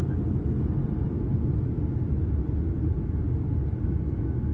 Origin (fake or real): real